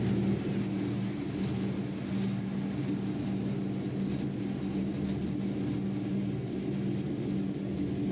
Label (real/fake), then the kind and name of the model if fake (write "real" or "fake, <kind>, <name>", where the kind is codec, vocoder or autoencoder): real